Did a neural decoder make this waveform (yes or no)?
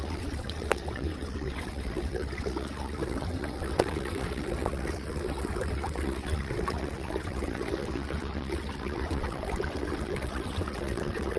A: yes